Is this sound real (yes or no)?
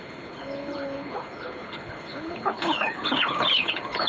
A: no